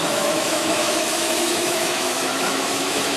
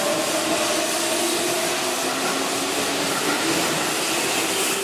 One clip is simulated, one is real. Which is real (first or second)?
second